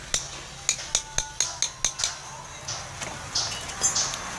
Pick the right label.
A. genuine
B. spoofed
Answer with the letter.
A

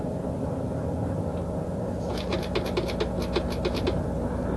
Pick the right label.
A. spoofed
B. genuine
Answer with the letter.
B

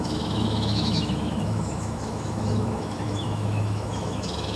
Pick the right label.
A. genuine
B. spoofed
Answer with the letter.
B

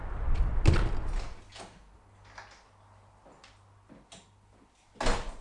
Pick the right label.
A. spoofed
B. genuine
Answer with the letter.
B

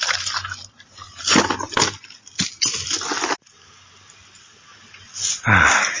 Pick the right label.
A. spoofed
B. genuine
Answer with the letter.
B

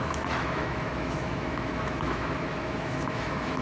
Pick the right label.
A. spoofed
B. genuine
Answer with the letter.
A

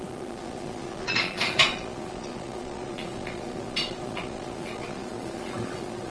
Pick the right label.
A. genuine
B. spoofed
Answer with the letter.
B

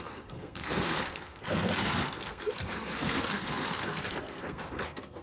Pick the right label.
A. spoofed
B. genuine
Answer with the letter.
A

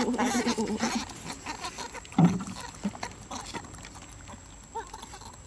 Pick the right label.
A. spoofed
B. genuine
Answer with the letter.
B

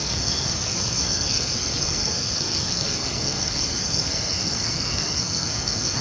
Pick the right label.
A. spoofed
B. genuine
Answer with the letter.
A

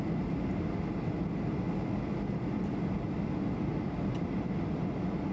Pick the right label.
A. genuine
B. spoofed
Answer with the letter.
A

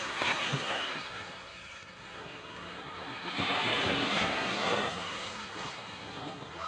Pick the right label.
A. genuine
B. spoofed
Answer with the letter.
B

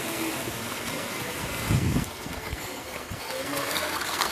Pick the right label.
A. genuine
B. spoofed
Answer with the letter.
B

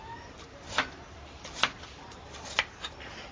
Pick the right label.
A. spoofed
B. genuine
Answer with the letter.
B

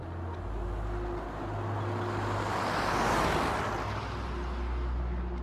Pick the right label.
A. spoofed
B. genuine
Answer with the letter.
B